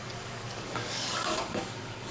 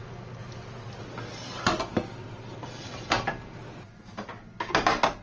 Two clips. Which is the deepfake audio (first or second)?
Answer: first